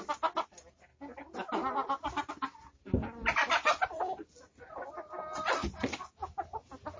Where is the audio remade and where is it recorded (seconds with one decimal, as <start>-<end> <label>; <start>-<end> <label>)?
0.0-7.0 recorded